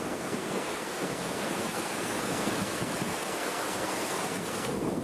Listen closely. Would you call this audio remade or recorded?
remade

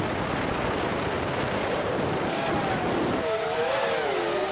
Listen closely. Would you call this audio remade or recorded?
recorded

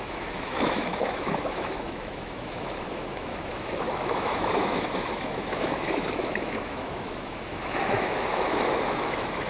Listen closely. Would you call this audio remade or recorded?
remade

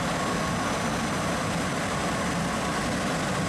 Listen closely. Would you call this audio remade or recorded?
recorded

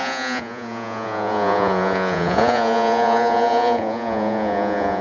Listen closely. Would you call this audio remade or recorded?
remade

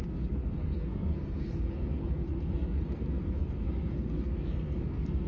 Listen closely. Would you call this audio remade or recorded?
remade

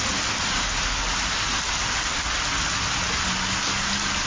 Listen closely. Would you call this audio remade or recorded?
recorded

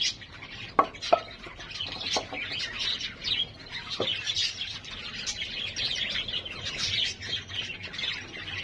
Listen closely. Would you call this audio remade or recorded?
recorded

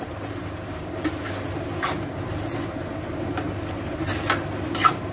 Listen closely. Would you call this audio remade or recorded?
recorded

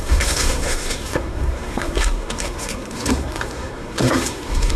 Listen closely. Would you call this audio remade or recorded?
remade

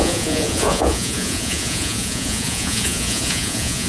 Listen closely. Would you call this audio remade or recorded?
remade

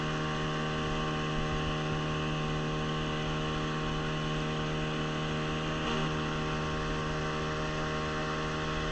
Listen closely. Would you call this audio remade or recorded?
recorded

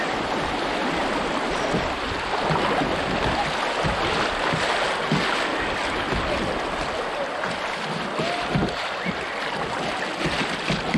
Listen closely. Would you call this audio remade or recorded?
recorded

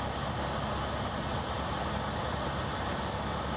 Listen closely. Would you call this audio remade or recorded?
recorded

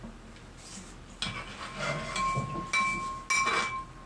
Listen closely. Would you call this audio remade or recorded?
recorded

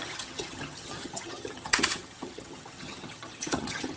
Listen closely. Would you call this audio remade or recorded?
remade